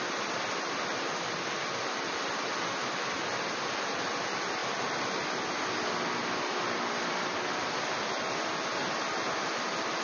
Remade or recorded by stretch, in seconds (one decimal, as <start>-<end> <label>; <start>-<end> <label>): 0.0-10.0 recorded